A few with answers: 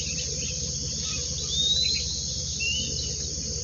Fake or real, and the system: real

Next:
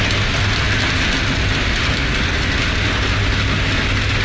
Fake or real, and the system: real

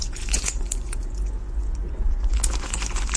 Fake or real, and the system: fake, vocoder, Vocos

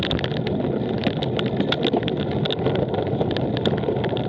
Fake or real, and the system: real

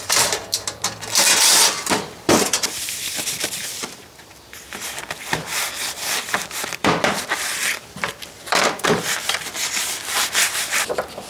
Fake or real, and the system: fake, vocoder, BigVGAN v2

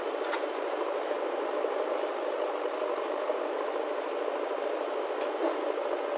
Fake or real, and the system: real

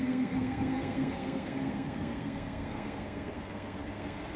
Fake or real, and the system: fake, codec, SNAC